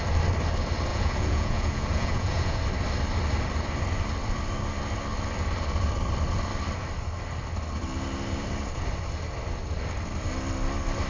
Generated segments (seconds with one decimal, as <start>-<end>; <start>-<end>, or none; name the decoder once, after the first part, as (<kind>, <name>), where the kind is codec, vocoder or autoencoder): 0.9-2.6 (vocoder, Vocos)